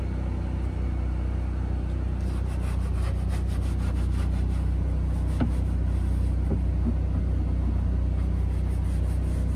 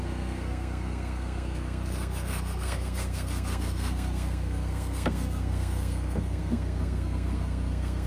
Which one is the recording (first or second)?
first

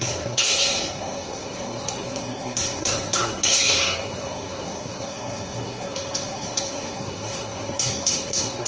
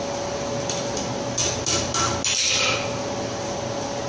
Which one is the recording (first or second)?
second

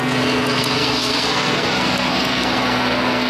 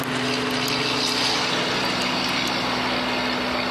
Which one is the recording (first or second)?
second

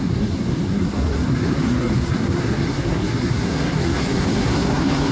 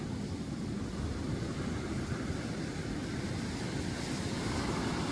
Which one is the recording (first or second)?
second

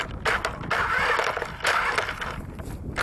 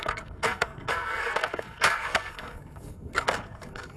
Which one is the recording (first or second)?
first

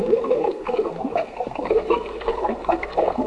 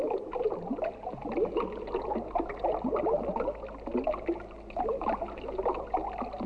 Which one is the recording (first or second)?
second